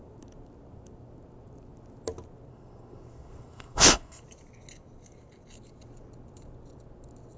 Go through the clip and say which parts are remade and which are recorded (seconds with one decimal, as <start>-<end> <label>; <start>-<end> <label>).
0.0-2.5 recorded; 2.5-4.2 remade; 4.2-7.4 recorded